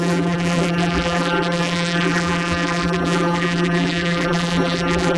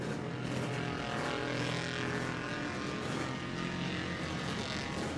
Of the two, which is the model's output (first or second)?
first